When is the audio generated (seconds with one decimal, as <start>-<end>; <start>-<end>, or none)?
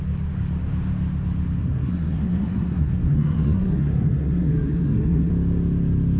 1.6-5.3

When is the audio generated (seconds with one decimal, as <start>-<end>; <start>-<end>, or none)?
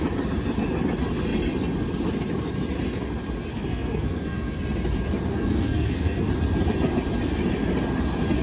3.5-4.6; 5.3-6.3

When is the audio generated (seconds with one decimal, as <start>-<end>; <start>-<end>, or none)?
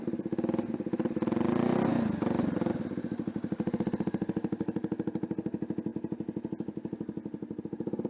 none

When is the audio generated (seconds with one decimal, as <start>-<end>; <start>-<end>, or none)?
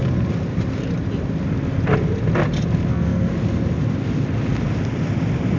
2.9-3.3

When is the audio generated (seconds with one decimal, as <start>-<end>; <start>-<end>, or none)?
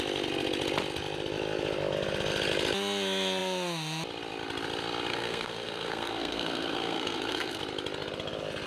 5.1-7.6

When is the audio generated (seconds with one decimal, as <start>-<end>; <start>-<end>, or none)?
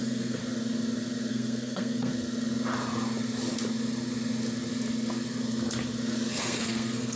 0.0-0.4; 1.3-2.1; 6.3-7.2